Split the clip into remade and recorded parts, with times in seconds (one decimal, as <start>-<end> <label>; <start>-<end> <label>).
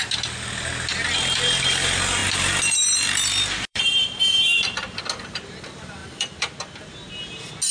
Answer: 0.0-2.2 recorded; 2.2-5.0 remade; 5.0-6.0 recorded; 6.0-6.6 remade; 6.6-7.7 recorded